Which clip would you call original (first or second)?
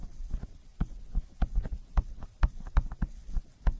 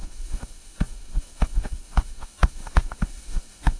first